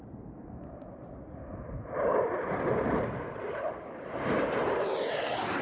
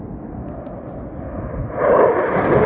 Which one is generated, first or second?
first